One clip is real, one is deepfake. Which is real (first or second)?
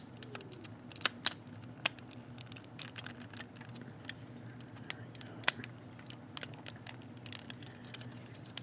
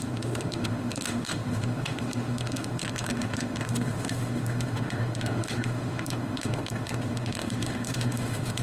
first